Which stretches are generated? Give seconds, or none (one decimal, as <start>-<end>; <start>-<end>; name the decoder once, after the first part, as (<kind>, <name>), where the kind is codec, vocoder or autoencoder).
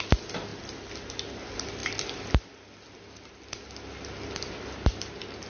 none